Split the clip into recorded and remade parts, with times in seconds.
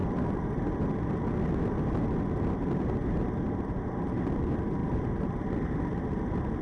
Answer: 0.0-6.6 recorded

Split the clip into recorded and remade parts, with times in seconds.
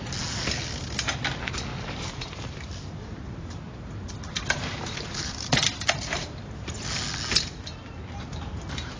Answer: 0.0-1.7 recorded; 1.7-6.7 remade; 6.7-9.0 recorded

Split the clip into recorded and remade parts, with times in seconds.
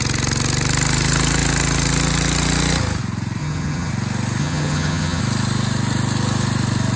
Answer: 0.0-3.4 recorded; 3.4-3.9 remade; 3.9-4.4 recorded; 4.4-5.2 remade; 5.2-7.0 recorded